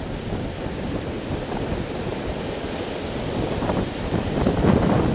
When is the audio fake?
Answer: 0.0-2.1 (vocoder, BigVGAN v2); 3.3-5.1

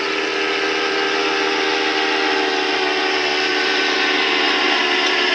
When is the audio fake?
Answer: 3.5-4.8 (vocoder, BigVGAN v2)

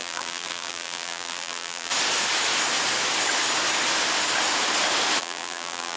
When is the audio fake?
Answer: 0.0-1.9 (vocoder, BigVGAN v2); 5.2-6.0

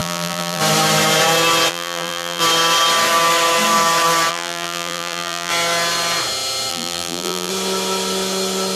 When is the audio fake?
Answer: 0.0-0.6 (vocoder, BigVGAN v2); 1.7-2.4; 4.3-5.5; 6.7-7.5